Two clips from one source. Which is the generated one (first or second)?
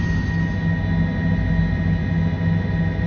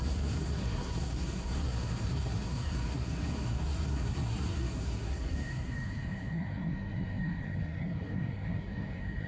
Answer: second